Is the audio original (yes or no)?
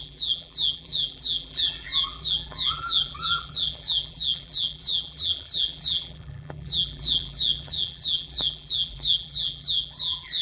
no